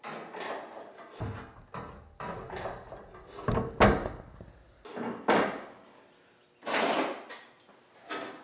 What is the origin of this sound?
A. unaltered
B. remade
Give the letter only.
A